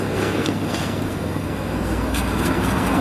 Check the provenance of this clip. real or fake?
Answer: fake